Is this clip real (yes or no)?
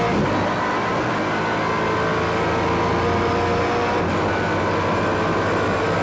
yes